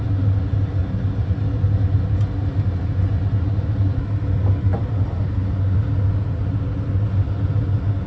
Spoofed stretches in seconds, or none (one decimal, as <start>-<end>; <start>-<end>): none